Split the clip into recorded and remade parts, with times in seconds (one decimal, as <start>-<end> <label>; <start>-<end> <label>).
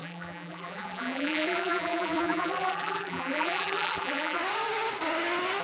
0.0-4.4 remade; 4.4-5.6 recorded